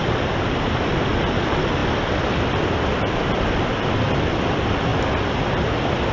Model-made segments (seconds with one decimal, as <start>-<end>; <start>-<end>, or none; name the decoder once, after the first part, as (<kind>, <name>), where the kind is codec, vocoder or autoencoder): 0.0-1.1 (vocoder, BigVGAN v2); 1.8-3.6; 4.9-5.6

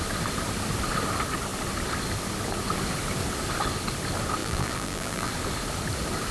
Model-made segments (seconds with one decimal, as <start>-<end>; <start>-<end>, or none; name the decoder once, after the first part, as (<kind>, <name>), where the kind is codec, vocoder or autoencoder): 4.4-5.3 (vocoder, BigVGAN v2)

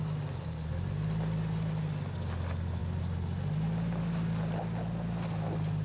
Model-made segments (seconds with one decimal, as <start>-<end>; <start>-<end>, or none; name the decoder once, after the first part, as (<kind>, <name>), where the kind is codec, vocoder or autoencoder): none

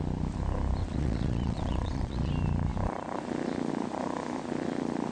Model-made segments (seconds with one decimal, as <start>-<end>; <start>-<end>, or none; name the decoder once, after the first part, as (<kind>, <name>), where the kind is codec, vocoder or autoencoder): 0.8-2.3 (vocoder, WaveNeXt)

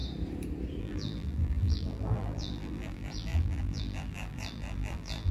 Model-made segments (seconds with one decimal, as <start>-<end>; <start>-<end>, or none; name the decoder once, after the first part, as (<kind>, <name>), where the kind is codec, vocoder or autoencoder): 0.8-5.3 (vocoder, BigVGAN v2)